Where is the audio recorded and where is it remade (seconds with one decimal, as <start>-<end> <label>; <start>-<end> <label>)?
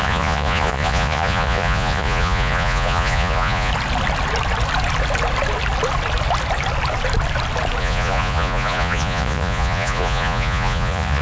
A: 0.0-3.7 remade; 3.7-7.8 recorded; 7.8-11.2 remade